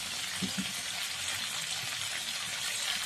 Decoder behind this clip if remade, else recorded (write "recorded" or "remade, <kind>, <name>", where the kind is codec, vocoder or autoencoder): recorded